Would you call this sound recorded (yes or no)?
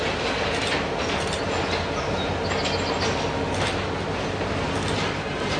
yes